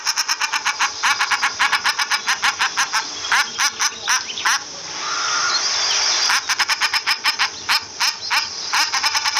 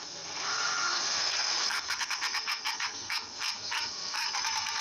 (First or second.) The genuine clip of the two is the first